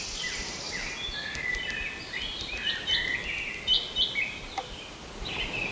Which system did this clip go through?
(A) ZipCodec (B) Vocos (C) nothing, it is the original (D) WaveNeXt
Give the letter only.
C